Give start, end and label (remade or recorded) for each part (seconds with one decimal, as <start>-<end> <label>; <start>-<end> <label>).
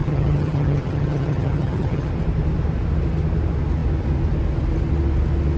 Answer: 0.0-2.1 remade; 2.1-5.6 recorded